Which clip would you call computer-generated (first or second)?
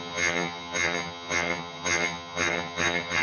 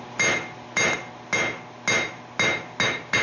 first